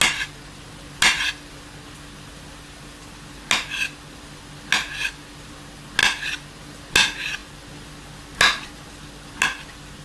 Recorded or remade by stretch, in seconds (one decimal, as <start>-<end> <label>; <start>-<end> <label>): 0.0-10.0 recorded